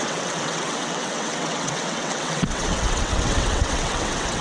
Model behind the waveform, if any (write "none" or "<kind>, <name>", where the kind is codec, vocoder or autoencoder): vocoder, WaveNeXt